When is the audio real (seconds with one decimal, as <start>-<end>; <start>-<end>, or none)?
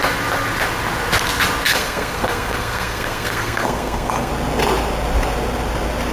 0.0-1.7; 4.3-6.1